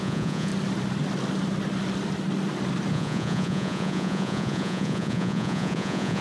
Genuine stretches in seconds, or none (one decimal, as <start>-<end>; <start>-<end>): 0.5-2.9